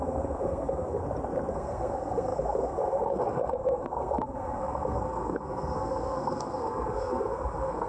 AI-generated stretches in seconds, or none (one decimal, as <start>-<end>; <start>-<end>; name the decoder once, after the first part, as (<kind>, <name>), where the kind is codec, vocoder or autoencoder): 0.0-1.0 (codec, SNAC); 1.5-7.9